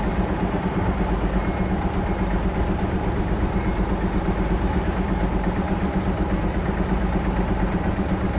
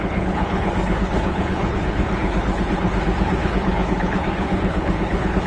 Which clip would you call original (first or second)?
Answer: first